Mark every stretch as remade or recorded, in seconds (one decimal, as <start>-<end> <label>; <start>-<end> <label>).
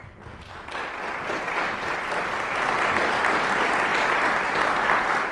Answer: 0.0-5.3 recorded